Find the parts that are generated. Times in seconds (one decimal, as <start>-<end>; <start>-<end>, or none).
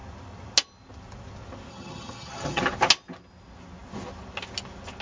1.7-2.6